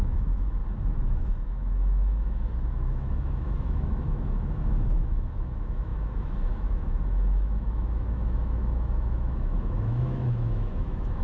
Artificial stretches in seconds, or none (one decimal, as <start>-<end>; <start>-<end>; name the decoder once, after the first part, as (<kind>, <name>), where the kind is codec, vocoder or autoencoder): 0.0-0.6 (autoencoder, DAC-VAE); 1.1-11.2